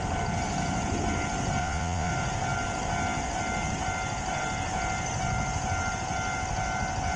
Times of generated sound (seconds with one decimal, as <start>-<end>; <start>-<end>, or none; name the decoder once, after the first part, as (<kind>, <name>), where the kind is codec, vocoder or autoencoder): 1.6-2.1 (vocoder, Vocos)